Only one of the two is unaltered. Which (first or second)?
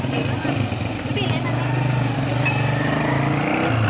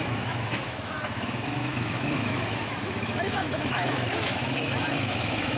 first